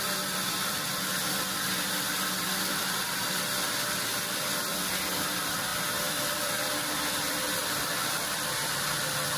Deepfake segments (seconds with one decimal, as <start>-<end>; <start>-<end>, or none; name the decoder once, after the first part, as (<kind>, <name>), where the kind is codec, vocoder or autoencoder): none